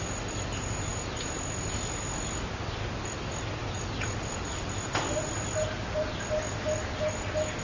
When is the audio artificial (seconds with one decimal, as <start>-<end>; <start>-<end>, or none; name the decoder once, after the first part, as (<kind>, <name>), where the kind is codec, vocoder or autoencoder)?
none

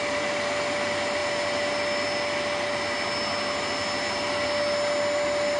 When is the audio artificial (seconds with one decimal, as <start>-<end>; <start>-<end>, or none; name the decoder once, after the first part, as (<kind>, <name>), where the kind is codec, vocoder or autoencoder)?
none

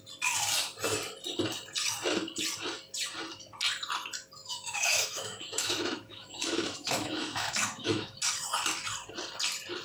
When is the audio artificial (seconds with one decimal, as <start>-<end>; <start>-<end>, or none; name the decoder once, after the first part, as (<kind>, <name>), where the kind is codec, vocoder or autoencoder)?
4.4-8.2 (autoencoder, DAC-VAE)

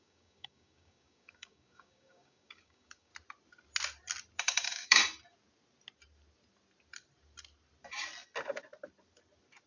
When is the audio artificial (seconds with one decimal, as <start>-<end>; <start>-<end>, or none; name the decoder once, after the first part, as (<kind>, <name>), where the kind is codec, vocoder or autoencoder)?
0.0-3.1 (codec, DAC); 4.4-5.0

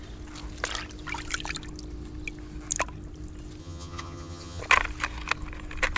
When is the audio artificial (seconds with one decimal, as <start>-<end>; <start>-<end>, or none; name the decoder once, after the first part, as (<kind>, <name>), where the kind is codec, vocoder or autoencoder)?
3.6-4.6 (vocoder, HiFi-GAN)

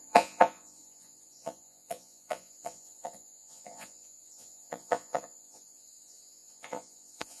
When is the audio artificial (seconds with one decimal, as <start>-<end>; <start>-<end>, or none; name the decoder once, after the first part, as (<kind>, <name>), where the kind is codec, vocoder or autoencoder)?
0.0-7.4 (vocoder, Vocos)